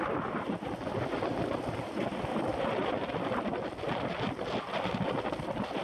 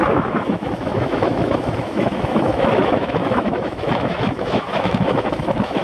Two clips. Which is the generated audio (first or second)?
second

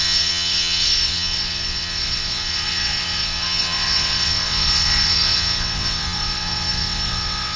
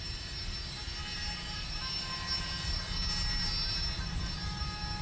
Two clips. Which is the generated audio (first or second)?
first